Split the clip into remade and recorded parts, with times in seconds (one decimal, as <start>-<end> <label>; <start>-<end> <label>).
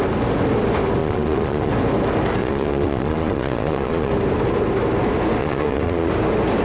0.0-1.0 recorded; 1.0-1.7 remade; 1.7-2.4 recorded; 2.4-4.1 remade; 4.1-5.4 recorded; 5.4-6.1 remade; 6.1-6.6 recorded